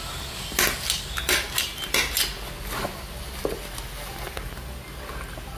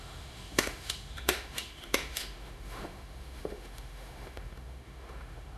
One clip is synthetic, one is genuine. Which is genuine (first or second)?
first